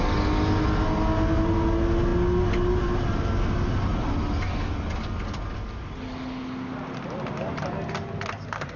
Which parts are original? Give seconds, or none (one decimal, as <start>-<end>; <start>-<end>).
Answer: 0.0-8.8